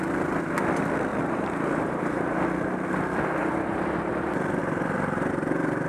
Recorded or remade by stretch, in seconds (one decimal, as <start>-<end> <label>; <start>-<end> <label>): 0.0-1.1 recorded; 1.1-2.4 remade; 2.4-3.4 recorded; 3.4-4.1 remade; 4.1-5.9 recorded